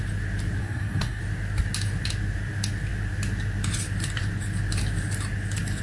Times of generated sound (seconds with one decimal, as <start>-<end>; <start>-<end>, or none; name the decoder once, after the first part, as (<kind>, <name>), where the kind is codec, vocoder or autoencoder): 0.6-1.2 (codec, SNAC)